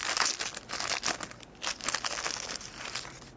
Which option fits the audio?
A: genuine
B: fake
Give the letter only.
A